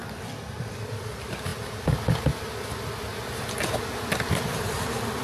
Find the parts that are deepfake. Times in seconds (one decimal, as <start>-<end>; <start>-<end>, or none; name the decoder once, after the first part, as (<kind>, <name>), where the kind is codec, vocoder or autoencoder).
0.7-1.5 (vocoder, BigVGAN v2); 4.6-5.2